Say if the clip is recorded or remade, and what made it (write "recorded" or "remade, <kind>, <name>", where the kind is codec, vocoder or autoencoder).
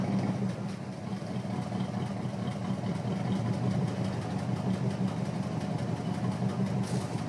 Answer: recorded